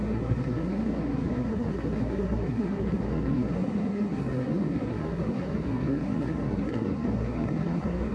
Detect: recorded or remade remade